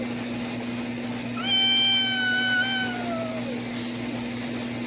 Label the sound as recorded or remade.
recorded